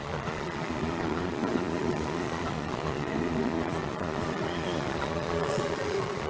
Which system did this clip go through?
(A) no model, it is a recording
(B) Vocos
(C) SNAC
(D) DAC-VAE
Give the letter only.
B